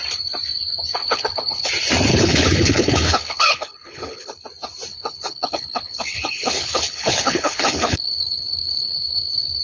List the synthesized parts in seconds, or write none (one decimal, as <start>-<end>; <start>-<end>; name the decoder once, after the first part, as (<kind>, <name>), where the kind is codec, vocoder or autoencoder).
1.0-1.7 (codec, HILCodec); 2.1-4.4; 4.9-9.6